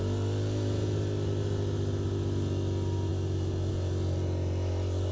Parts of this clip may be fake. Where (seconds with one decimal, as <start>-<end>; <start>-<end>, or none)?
none